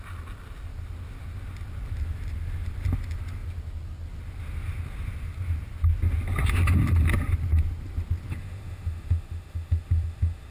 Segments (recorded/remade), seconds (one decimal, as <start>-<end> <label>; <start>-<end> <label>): 0.0-8.4 recorded; 8.4-10.5 remade